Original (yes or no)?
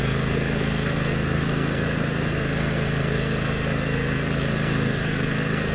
no